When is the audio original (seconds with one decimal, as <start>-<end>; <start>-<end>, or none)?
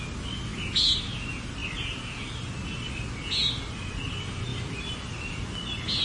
0.0-4.5; 5.3-6.0